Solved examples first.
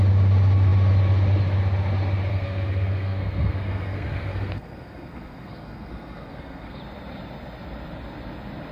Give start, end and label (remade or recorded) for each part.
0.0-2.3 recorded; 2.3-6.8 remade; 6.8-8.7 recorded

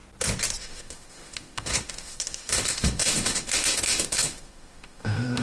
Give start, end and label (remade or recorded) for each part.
0.0-0.6 recorded; 0.6-5.4 remade

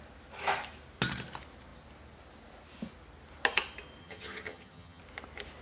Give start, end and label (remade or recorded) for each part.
0.0-4.0 recorded; 4.0-5.0 remade; 5.0-5.6 recorded

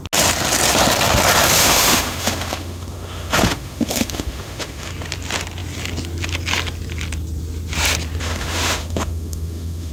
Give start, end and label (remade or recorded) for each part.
0.0-1.6 recorded; 1.6-4.9 remade; 4.9-8.2 recorded; 8.2-9.9 remade

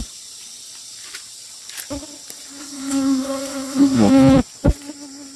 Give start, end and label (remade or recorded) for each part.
0.0-2.6 recorded; 2.6-4.1 remade; 4.1-5.4 recorded

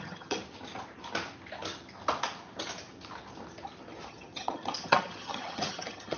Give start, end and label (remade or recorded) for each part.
0.0-0.4 remade; 0.4-4.1 recorded; 4.1-6.2 remade